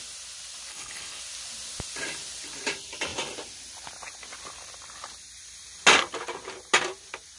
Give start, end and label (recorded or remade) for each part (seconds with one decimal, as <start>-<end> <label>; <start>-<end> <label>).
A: 0.0-0.7 recorded; 0.7-1.2 remade; 1.2-7.4 recorded